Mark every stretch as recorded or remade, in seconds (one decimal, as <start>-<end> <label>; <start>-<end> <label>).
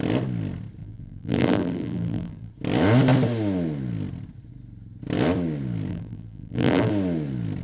0.0-0.8 recorded; 0.8-2.5 remade; 2.5-5.9 recorded; 5.9-6.9 remade; 6.9-7.6 recorded